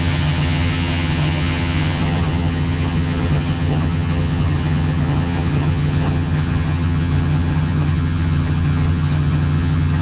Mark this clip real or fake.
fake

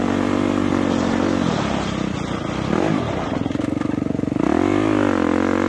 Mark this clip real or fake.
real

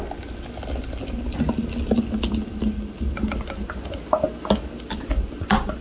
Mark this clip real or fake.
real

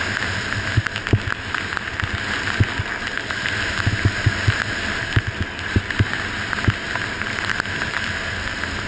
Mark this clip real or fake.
real